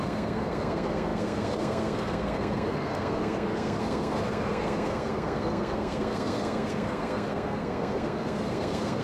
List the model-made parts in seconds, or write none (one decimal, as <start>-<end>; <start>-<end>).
0.0-9.0